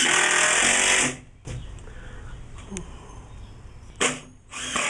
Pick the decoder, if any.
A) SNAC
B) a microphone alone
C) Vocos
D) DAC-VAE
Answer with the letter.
B